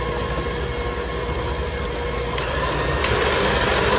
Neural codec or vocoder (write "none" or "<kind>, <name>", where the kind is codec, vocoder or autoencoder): none